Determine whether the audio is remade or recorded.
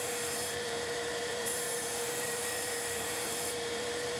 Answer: remade